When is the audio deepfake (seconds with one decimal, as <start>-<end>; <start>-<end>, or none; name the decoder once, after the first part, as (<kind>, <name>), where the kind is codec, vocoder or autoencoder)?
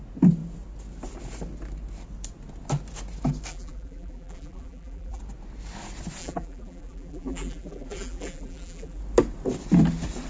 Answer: 3.5-5.2 (vocoder, BigVGAN v2); 6.2-9.0